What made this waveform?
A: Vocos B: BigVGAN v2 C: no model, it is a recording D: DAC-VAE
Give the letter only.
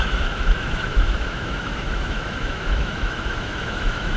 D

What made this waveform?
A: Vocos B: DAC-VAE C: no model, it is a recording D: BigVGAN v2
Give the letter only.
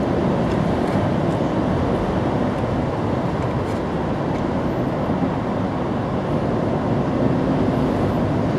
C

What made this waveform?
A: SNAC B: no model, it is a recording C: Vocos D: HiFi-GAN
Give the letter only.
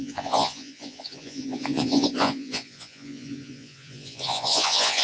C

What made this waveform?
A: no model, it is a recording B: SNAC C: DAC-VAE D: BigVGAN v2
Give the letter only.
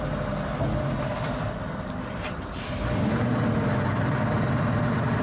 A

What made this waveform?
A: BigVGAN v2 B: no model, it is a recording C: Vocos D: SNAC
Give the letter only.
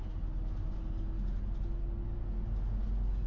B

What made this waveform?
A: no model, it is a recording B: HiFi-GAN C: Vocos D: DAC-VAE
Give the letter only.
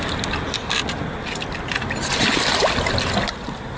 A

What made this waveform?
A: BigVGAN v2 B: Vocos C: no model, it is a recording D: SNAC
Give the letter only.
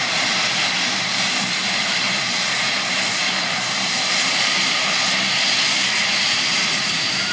A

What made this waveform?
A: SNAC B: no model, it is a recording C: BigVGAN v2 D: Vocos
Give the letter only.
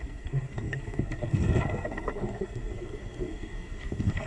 A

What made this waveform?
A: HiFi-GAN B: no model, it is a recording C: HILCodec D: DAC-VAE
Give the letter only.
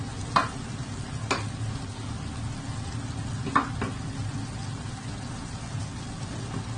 B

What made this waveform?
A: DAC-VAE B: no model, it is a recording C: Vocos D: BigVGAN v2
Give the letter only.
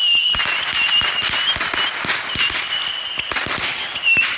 B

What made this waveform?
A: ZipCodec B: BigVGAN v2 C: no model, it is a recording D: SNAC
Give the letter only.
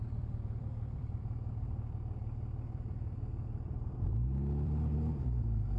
B